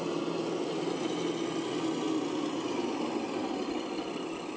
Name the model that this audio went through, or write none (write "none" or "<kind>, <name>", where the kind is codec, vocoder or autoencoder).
none